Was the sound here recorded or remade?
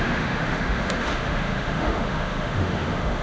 remade